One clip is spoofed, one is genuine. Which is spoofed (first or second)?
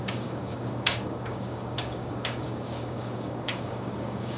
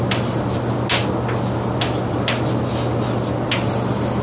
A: first